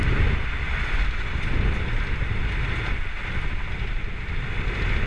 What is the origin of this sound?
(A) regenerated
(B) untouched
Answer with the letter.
B